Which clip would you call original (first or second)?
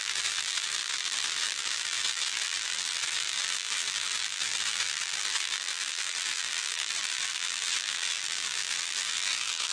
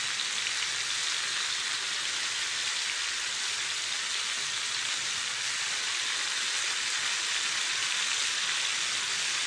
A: second